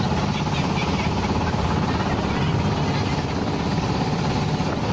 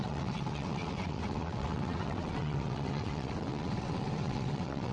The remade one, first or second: second